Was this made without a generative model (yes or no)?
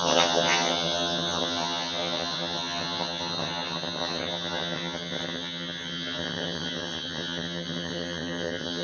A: no